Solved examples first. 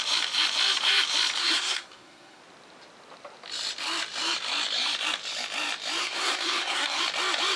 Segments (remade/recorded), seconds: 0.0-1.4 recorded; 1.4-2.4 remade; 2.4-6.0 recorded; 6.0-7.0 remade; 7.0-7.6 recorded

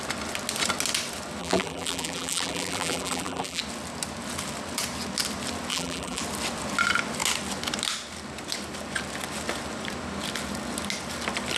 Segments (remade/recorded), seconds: 0.0-1.4 recorded; 1.4-3.6 remade; 3.6-5.7 recorded; 5.7-6.2 remade; 6.2-11.6 recorded

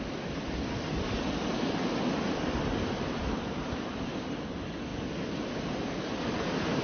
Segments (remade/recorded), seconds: 0.0-6.8 recorded

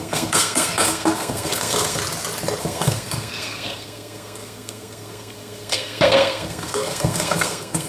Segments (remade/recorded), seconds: 0.0-2.0 remade; 2.0-2.6 recorded; 2.6-7.9 remade

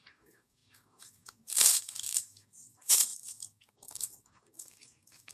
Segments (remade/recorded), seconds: 0.0-5.3 remade

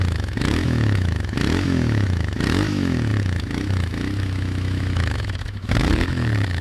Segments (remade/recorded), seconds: 0.0-6.6 remade

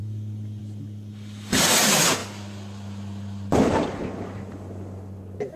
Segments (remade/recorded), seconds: 0.0-5.6 recorded

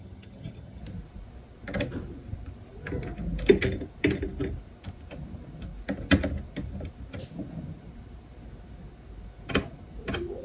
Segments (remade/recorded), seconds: 0.0-0.8 remade; 0.8-10.4 recorded